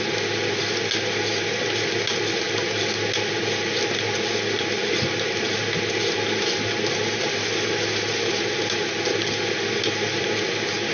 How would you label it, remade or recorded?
recorded